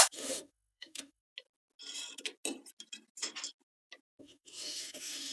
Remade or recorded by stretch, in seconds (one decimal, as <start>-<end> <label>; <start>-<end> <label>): 0.0-1.2 remade; 1.2-4.2 recorded; 4.2-5.3 remade